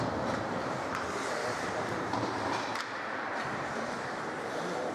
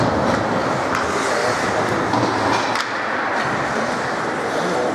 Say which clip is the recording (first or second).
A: second